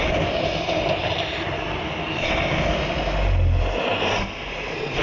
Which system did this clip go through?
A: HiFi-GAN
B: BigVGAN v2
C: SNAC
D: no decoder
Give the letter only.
D